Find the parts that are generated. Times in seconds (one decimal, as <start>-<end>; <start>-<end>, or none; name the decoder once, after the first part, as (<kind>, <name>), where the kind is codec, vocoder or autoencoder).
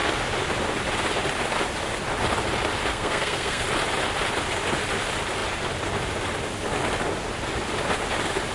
2.9-3.6 (codec, SNAC)